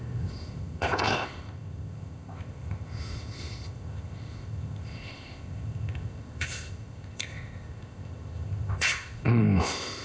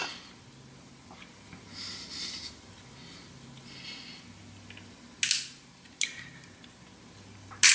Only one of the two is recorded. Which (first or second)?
second